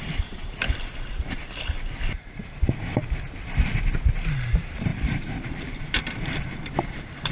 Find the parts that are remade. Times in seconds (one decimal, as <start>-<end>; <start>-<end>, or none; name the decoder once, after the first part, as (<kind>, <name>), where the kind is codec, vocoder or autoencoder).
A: 0.0-1.4 (vocoder, BigVGAN v2); 4.0-7.3